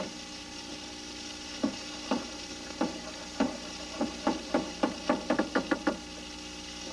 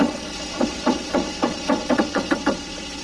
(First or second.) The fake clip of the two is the second